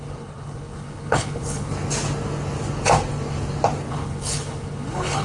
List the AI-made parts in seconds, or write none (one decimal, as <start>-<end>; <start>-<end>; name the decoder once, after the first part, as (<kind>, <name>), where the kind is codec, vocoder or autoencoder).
0.0-1.7 (codec, HILCodec); 3.9-5.2